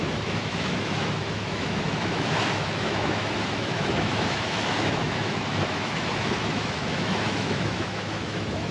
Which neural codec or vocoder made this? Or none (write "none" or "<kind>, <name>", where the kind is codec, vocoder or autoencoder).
autoencoder, DAC-VAE